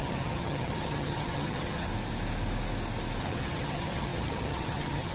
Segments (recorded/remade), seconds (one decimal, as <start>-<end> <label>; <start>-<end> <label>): 0.0-1.9 remade; 1.9-3.2 recorded; 3.2-5.1 remade